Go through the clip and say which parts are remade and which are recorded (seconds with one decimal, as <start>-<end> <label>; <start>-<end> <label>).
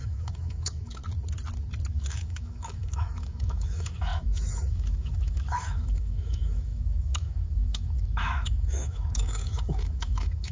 0.0-1.0 remade; 1.0-1.9 recorded; 1.9-10.5 remade